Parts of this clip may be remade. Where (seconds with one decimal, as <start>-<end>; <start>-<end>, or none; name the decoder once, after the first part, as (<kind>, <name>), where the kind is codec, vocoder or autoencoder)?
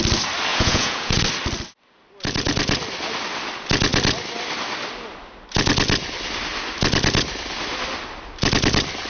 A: 0.5-1.2 (vocoder, Vocos)